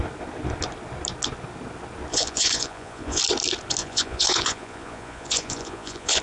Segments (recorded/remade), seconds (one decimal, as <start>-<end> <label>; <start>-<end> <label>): 0.0-2.1 recorded; 2.1-3.2 remade; 3.2-3.8 recorded; 3.8-6.2 remade